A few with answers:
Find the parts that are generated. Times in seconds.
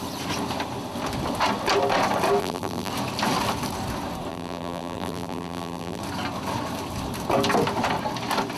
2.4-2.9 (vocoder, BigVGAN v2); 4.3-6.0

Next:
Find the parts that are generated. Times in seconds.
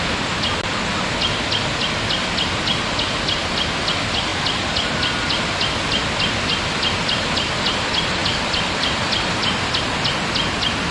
3.4-3.9 (vocoder, BigVGAN v2); 8.2-9.8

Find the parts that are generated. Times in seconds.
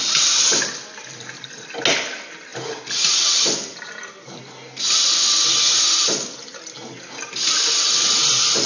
0.5-1.6 (vocoder, BigVGAN v2); 6.8-7.4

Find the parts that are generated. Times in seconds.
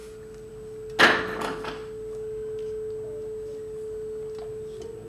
none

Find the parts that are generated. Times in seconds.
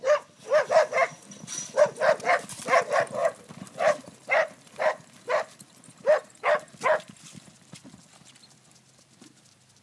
3.2-6.8 (vocoder, BigVGAN v2)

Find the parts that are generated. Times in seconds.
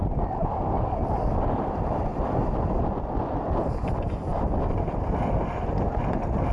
none